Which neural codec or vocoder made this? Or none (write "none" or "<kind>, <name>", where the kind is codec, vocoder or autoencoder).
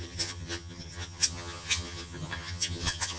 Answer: vocoder, HiFi-GAN